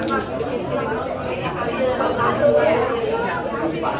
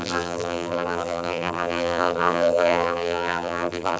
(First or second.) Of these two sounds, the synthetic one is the second